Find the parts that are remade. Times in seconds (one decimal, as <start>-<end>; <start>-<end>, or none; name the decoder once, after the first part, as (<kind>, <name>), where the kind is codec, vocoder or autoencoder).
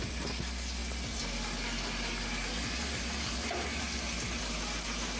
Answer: none